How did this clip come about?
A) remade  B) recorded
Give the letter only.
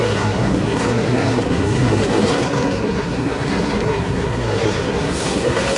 A